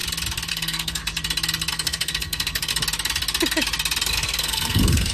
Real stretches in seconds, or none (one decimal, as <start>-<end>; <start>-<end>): 0.0-0.5; 1.0-1.7; 2.7-4.1